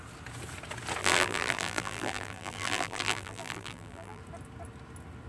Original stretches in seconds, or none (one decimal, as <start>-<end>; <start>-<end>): 0.0-1.0; 4.2-5.3